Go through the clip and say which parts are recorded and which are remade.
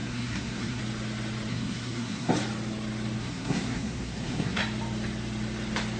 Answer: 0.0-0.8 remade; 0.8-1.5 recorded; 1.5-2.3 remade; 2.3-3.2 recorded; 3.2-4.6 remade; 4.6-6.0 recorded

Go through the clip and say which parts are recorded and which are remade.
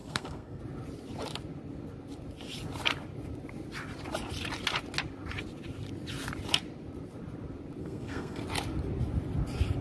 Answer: 0.0-0.6 remade; 0.6-7.8 recorded; 7.8-8.4 remade; 8.4-9.8 recorded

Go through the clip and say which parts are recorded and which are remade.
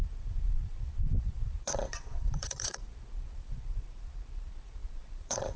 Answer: 0.0-5.6 remade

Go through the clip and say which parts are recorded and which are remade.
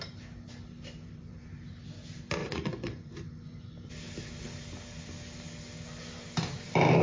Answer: 0.0-2.4 recorded; 2.4-3.1 remade; 3.1-7.0 recorded